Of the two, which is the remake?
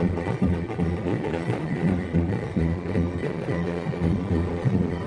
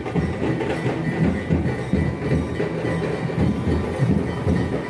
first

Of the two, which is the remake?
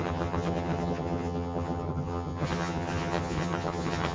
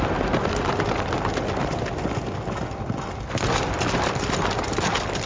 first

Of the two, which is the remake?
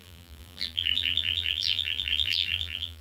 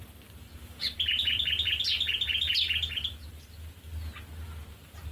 first